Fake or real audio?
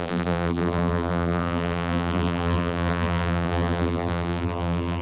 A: fake